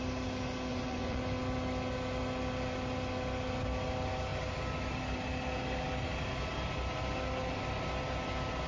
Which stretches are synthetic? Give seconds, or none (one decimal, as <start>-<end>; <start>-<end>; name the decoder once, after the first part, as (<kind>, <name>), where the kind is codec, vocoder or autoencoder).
0.7-1.2 (vocoder, Vocos)